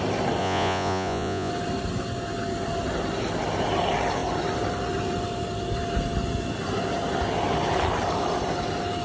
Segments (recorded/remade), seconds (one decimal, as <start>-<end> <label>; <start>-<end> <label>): 0.0-0.4 recorded; 0.4-1.5 remade; 1.5-9.0 recorded